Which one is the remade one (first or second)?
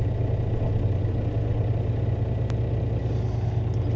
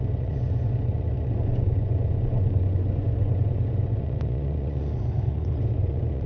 second